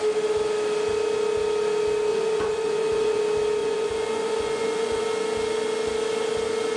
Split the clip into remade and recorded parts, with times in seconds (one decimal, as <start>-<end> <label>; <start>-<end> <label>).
0.0-2.1 recorded; 2.1-3.2 remade; 3.2-3.6 recorded; 3.6-5.0 remade; 5.0-6.8 recorded